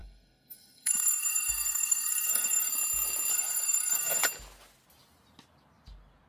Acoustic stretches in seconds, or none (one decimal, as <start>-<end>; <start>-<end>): 2.7-3.3; 4.2-6.3